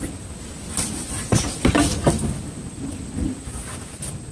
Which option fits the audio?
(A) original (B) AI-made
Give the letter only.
A